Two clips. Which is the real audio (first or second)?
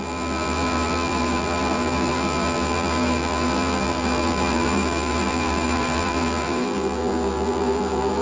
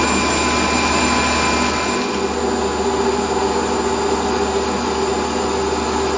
second